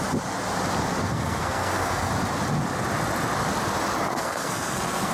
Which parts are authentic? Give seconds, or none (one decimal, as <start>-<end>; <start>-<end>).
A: 0.0-1.0; 2.1-4.1